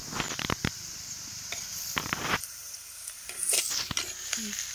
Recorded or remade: recorded